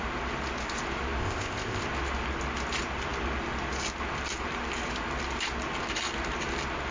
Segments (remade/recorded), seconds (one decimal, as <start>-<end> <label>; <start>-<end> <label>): 0.0-1.2 recorded; 1.2-1.8 remade; 1.8-6.9 recorded